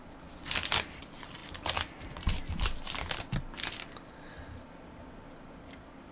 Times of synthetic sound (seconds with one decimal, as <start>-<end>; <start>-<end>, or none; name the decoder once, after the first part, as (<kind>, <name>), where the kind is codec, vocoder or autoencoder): none